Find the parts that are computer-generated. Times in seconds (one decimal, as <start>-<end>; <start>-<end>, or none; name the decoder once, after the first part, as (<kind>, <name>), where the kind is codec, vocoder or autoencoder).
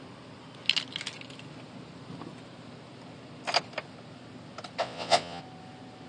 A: 4.8-5.4 (vocoder, WaveNeXt)